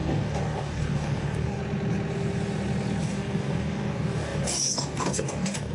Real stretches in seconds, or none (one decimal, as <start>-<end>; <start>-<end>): 1.6-3.0